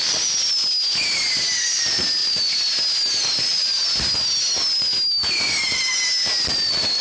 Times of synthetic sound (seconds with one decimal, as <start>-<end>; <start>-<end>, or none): none